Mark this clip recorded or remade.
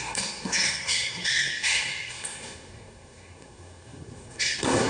remade